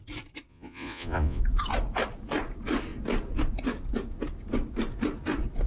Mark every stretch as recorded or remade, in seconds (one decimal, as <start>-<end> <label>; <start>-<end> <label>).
0.0-0.5 recorded; 0.5-1.4 remade; 1.4-5.7 recorded